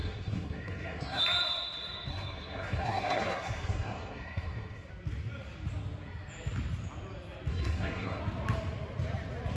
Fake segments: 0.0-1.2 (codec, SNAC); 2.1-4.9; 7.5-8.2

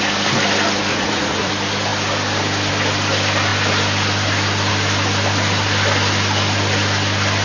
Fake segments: 0.9-1.5 (vocoder, Vocos)